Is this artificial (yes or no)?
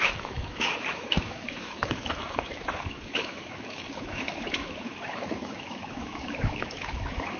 yes